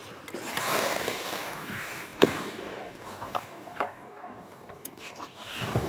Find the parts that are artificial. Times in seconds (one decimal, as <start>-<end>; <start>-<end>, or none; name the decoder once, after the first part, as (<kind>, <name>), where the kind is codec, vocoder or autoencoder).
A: 0.6-5.9 (codec, DAC)